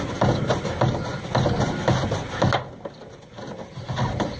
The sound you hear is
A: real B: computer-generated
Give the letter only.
A